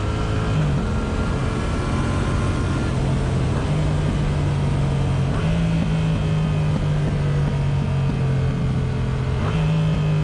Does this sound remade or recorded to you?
recorded